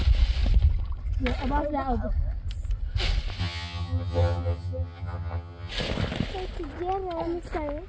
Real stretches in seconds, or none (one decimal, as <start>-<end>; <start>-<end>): 0.0-3.4; 5.7-7.9